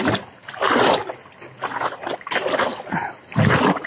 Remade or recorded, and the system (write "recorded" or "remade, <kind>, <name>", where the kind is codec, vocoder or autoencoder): recorded